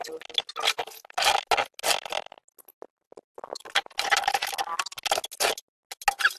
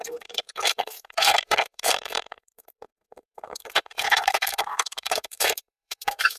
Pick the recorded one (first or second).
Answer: first